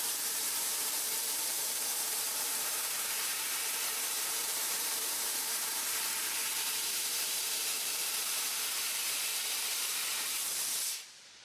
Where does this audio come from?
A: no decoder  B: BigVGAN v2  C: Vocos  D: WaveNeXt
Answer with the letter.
B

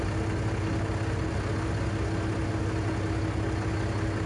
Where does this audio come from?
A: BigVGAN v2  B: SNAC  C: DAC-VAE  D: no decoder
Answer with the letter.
D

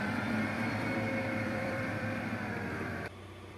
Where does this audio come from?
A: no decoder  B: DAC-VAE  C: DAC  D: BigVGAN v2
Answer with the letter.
D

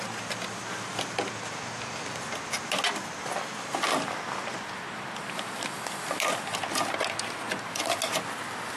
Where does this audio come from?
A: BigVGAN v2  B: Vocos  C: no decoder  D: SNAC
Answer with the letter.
C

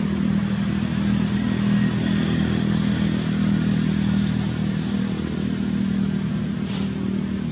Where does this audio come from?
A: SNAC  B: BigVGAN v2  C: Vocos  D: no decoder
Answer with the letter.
D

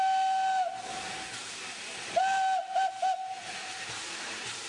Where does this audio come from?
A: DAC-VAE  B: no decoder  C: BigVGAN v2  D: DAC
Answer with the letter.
B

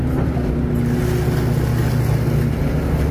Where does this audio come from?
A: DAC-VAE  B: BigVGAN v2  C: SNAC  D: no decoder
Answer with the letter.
D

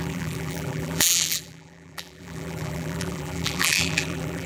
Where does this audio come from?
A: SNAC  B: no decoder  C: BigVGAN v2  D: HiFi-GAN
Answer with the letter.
C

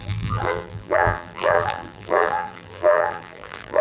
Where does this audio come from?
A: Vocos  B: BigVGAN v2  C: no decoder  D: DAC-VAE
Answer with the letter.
B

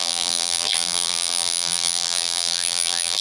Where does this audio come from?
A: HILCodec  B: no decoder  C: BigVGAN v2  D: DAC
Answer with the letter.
C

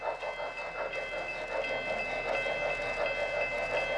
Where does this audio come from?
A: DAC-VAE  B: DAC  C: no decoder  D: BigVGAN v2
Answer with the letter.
C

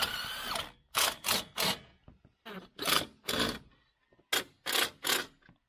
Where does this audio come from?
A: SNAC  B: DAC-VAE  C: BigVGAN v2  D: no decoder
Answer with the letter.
D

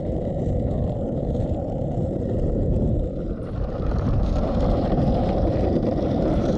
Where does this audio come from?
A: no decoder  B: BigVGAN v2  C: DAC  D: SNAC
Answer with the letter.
B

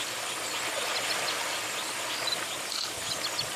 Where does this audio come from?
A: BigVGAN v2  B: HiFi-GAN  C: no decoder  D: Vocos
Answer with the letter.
C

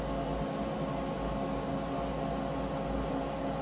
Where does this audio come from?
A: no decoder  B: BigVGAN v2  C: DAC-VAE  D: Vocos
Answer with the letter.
A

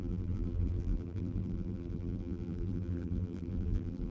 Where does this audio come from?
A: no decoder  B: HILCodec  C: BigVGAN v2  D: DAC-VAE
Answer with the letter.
C